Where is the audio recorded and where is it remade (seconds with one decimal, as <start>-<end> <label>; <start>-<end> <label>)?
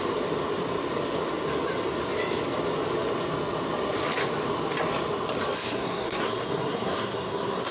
0.0-5.6 recorded; 5.6-7.7 remade